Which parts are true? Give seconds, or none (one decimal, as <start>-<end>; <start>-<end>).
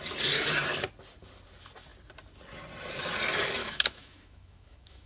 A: 0.0-3.6